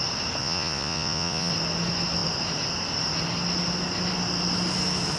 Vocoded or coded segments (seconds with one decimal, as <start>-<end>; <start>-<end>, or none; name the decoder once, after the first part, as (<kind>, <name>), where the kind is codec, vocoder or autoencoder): 0.4-1.5 (vocoder, Vocos)